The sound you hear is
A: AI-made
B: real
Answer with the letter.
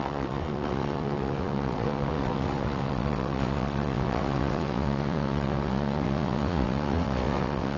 A